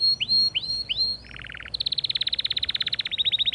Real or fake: real